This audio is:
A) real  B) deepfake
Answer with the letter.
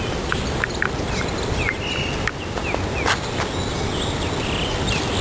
A